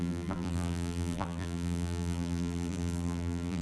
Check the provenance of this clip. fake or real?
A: fake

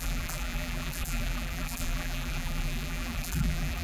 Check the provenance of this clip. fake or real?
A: fake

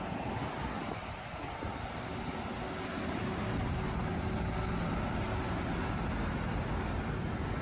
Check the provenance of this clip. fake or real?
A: real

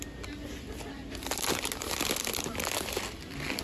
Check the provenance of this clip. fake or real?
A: real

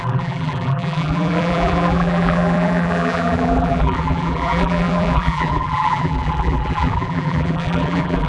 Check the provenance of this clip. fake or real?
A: fake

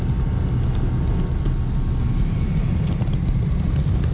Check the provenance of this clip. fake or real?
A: real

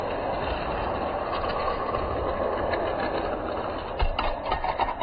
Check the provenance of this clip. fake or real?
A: real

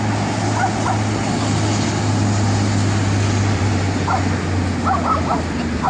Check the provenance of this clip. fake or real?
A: real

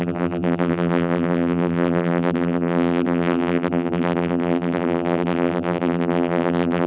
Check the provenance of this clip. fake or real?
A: fake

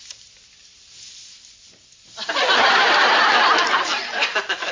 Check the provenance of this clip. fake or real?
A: real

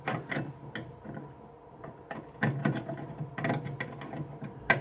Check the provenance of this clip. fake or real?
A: real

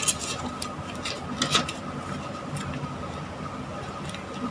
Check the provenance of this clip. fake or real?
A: real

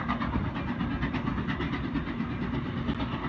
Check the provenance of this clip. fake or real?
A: real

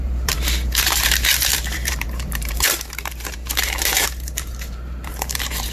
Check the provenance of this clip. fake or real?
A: fake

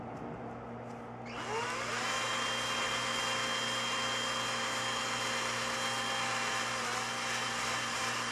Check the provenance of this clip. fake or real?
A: real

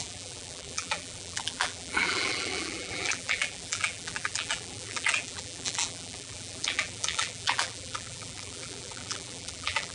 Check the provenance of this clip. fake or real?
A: fake